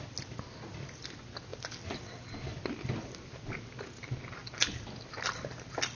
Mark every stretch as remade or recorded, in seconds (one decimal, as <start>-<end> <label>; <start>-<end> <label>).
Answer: 0.0-5.9 recorded